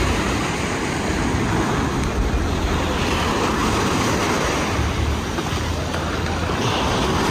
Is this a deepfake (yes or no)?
no